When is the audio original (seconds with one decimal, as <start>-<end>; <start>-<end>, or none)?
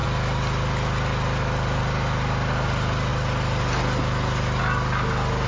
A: 0.0-5.5